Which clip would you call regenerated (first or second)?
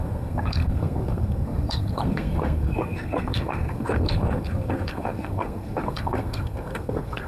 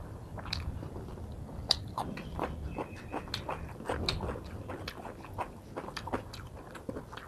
first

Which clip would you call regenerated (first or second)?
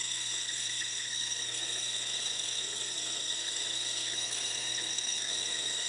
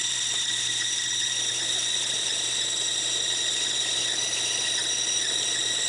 first